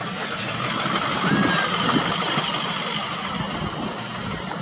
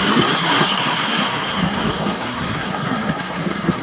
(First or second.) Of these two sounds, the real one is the first